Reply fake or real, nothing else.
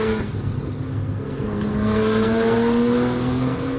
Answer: fake